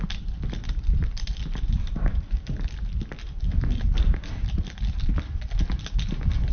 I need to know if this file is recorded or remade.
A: recorded